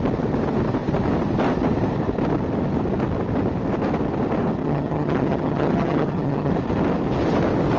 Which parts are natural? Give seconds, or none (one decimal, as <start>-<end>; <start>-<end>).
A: 0.0-4.6; 6.5-7.8